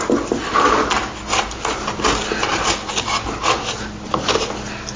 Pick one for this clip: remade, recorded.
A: recorded